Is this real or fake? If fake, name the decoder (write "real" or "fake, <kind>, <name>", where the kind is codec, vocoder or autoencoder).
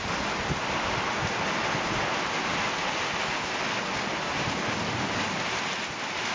real